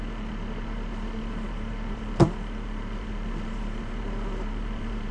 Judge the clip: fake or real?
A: fake